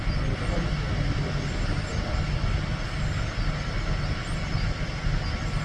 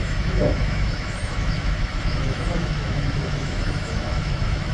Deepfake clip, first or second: second